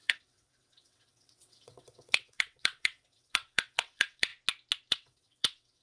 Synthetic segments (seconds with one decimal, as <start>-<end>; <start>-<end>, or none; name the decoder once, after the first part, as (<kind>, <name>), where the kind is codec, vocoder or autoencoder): 0.0-4.3 (vocoder, WaveNeXt); 4.9-5.8